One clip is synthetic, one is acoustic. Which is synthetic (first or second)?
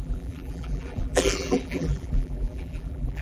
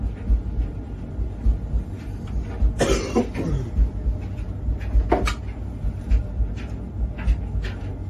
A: first